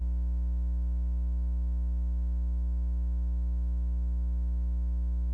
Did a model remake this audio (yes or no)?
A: no